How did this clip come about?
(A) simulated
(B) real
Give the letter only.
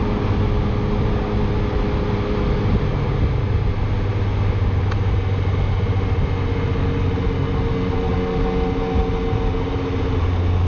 B